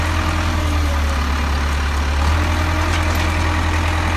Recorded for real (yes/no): yes